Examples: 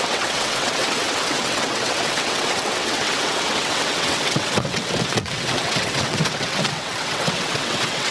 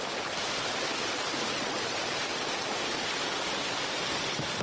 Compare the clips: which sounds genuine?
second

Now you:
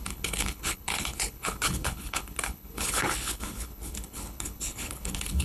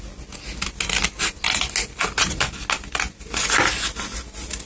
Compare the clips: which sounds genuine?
second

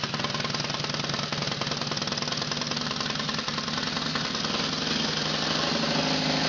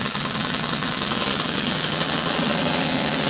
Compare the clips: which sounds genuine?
first